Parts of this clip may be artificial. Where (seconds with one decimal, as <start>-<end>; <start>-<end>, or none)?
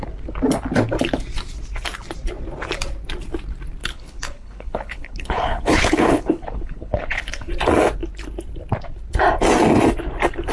3.8-7.5